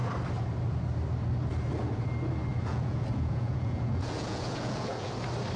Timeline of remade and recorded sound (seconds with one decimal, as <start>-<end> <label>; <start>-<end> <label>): 0.0-2.5 recorded; 2.5-5.1 remade; 5.1-5.6 recorded